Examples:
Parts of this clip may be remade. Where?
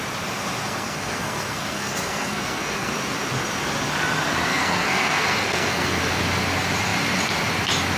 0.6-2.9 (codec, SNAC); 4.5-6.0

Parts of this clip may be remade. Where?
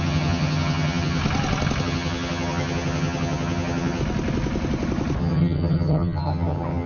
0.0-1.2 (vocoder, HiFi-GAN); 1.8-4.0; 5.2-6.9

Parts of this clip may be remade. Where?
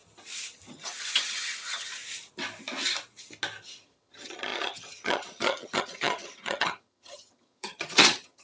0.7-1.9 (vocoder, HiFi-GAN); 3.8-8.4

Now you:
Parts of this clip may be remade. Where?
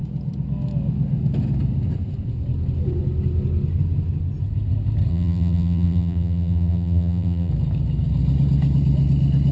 5.1-7.5 (vocoder, BigVGAN v2)